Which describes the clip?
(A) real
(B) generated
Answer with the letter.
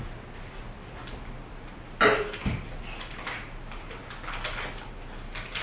A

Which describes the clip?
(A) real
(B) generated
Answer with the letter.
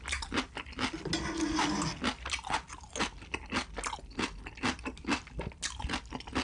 A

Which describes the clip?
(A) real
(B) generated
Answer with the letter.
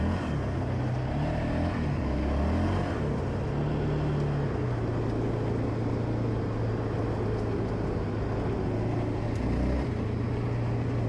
A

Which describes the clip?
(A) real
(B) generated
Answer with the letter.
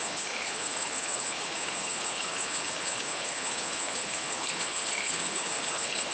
B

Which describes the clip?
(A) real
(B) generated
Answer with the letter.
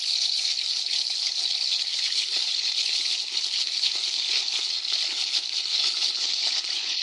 B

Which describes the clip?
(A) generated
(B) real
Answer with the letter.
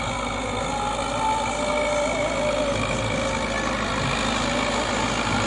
B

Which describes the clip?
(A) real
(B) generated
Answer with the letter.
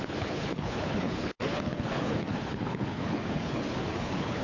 B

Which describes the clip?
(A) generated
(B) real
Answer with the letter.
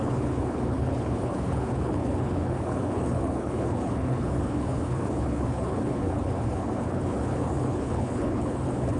A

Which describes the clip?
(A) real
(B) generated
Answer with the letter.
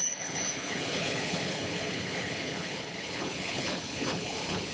B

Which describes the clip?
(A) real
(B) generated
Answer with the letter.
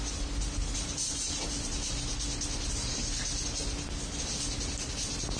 A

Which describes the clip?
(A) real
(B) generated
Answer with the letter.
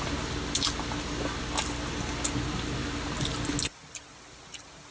A